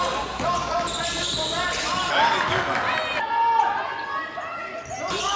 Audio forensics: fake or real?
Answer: real